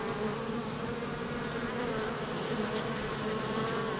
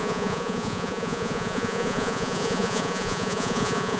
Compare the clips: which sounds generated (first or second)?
second